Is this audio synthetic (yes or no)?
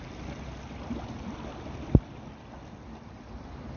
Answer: no